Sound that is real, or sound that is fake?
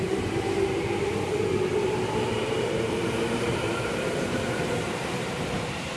fake